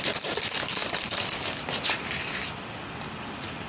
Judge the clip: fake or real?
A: real